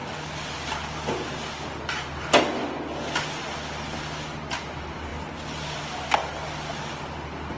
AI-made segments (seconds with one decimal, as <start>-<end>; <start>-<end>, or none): none